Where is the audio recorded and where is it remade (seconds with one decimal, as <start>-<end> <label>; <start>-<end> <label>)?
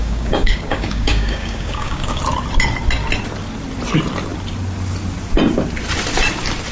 0.0-2.2 remade; 2.2-6.7 recorded